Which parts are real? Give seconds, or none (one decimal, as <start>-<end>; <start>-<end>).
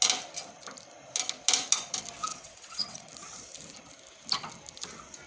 0.0-2.3; 3.1-5.3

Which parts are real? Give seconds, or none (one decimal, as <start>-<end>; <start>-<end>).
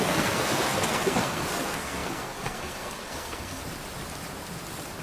3.6-5.0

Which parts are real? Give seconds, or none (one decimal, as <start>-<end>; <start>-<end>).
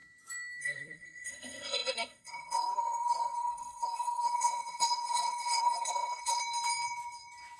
0.0-0.6; 6.4-7.6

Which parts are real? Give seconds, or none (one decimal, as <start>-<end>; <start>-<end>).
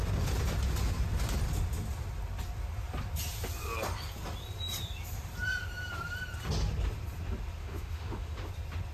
0.0-7.6; 8.5-8.9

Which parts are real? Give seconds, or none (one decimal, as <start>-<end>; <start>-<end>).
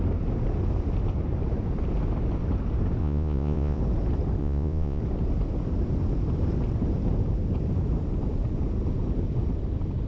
0.0-3.0; 3.8-4.4; 5.0-10.1